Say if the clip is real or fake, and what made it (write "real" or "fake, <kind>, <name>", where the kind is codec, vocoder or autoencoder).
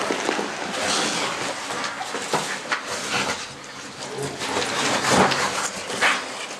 real